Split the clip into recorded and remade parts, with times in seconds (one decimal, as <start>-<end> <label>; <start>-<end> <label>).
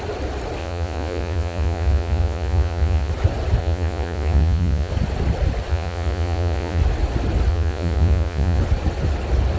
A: 0.0-0.6 recorded; 0.6-3.1 remade; 3.1-3.6 recorded; 3.6-4.9 remade; 4.9-5.7 recorded; 5.7-6.8 remade; 6.8-7.5 recorded; 7.5-8.6 remade; 8.6-9.6 recorded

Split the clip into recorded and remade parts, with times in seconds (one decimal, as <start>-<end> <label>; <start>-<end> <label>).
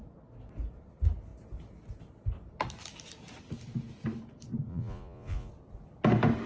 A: 0.0-4.7 recorded; 4.7-5.5 remade; 5.5-6.5 recorded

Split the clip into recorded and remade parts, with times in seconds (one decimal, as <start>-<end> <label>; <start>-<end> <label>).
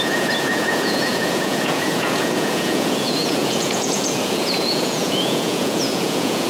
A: 0.0-6.5 remade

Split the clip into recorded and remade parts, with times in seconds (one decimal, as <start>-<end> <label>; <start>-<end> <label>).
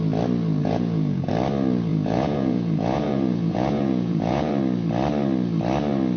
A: 0.0-0.6 recorded; 0.6-1.3 remade; 1.3-1.9 recorded; 1.9-4.5 remade; 4.5-6.2 recorded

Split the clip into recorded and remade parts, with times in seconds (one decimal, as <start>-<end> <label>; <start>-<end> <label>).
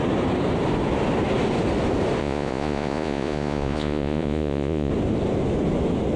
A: 0.0-2.2 recorded; 2.2-4.9 remade; 4.9-6.2 recorded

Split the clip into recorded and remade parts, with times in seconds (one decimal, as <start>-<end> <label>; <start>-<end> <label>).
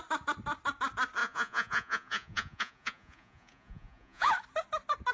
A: 0.0-1.2 recorded; 1.2-4.3 remade; 4.3-5.1 recorded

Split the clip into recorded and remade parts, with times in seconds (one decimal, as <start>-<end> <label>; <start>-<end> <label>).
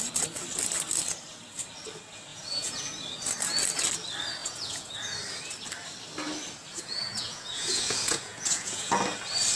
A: 0.0-2.3 recorded; 2.3-2.8 remade; 2.8-4.4 recorded; 4.4-4.9 remade; 4.9-6.7 recorded; 6.7-9.0 remade; 9.0-9.6 recorded